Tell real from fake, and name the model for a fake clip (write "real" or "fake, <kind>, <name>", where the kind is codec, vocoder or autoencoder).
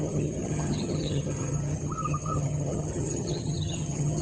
fake, vocoder, HiFi-GAN